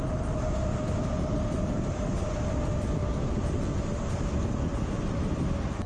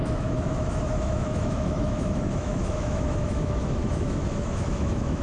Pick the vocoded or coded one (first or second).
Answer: second